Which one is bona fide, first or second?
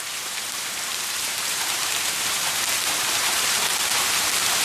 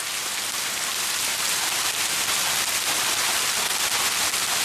second